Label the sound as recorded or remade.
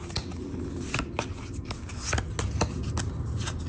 recorded